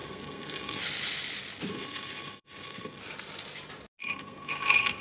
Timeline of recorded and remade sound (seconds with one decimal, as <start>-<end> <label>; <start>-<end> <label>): 0.0-0.8 remade; 0.8-1.7 recorded; 1.7-3.0 remade; 3.0-4.0 recorded; 4.0-5.0 remade